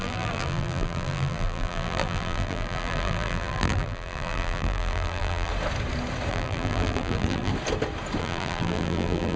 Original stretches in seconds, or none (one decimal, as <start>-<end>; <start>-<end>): 5.5-6.3; 7.5-8.2